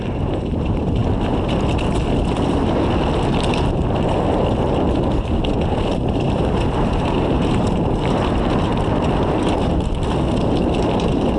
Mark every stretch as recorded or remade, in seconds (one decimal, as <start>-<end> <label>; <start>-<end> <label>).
0.0-1.0 remade; 1.0-5.5 recorded; 5.5-8.7 remade; 8.7-10.8 recorded; 10.8-11.4 remade